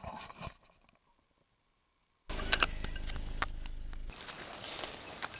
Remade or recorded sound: recorded